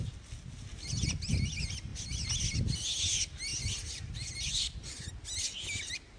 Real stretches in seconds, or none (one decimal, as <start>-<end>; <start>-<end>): 0.0-6.2